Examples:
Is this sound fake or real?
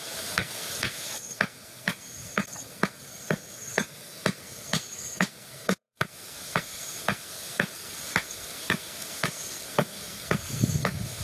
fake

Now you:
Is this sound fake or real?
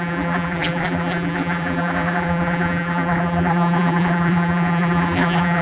fake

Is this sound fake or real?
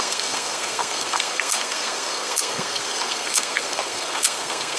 fake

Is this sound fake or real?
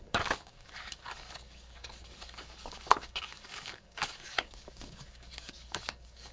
fake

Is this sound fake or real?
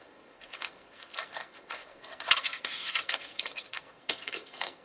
fake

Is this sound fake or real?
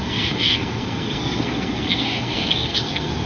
fake